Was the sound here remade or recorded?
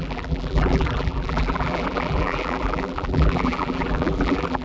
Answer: remade